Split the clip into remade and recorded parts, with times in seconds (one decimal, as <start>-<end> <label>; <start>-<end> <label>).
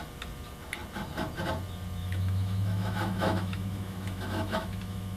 0.0-2.0 recorded; 2.0-5.2 remade